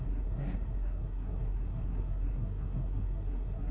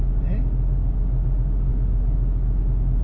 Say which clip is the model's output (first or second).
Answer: first